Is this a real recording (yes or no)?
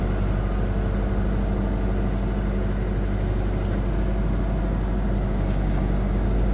yes